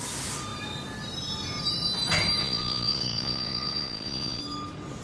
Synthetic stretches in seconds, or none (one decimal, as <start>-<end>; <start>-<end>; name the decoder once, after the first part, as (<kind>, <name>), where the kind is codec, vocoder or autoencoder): 2.4-4.4 (vocoder, Vocos)